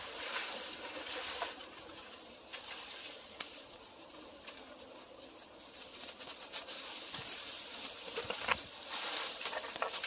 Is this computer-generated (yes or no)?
no